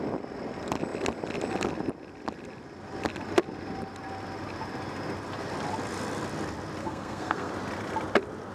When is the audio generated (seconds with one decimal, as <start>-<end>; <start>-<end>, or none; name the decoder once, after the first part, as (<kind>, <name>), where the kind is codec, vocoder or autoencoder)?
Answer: 6.8-7.5 (codec, SNAC)